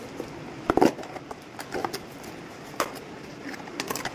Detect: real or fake real